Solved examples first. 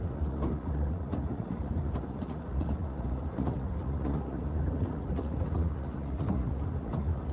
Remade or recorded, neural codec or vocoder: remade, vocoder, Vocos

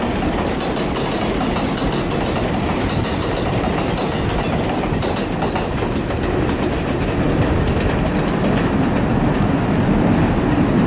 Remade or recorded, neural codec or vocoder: recorded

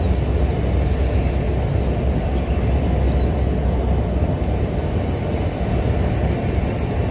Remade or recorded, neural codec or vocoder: recorded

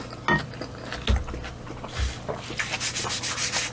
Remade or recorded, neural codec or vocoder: recorded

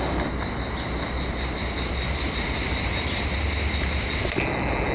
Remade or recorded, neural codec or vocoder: recorded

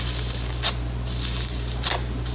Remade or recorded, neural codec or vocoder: recorded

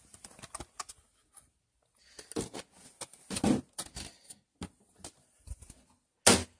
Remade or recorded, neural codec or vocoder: recorded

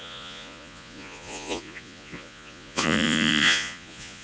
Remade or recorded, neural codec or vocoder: remade, vocoder, Vocos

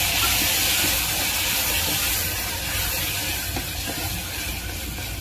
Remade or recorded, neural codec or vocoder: recorded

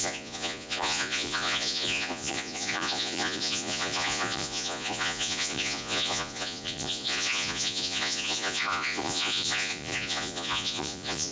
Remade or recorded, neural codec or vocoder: remade, vocoder, Vocos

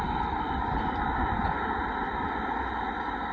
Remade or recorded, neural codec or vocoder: recorded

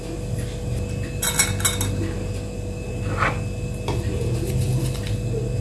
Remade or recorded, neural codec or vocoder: recorded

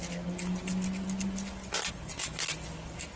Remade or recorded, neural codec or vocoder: recorded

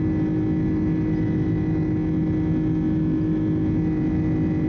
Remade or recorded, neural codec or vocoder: recorded